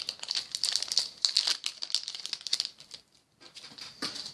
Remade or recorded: recorded